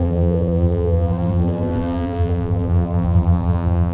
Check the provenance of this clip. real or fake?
fake